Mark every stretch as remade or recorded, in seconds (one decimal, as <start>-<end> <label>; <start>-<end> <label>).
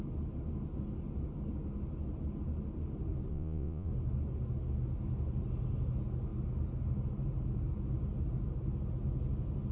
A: 0.0-3.3 recorded; 3.3-3.9 remade; 3.9-9.7 recorded